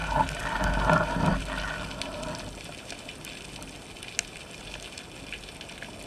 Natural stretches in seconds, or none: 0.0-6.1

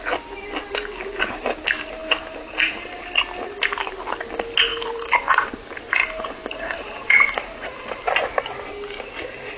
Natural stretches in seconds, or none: 0.0-2.0; 3.0-4.7; 5.5-6.0; 8.0-9.6

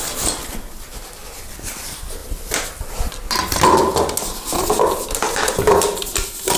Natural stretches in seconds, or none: 0.0-6.6

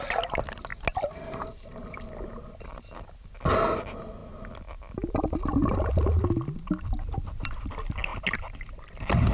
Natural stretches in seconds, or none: 0.0-9.3